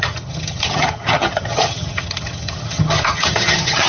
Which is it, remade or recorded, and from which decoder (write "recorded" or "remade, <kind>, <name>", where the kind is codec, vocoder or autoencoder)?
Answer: remade, vocoder, HiFi-GAN